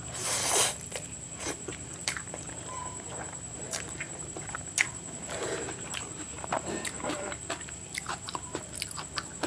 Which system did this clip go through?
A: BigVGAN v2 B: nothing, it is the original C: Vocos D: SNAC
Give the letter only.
A